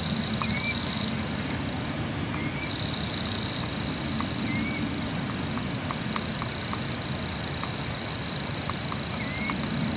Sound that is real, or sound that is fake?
real